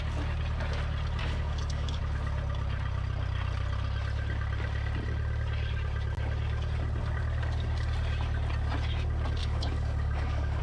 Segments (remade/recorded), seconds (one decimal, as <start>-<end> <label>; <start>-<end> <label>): 0.0-1.2 recorded; 1.2-2.0 remade; 2.0-9.4 recorded; 9.4-10.6 remade